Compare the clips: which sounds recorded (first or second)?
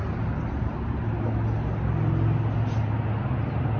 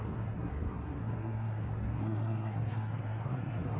first